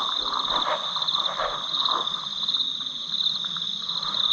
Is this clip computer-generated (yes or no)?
no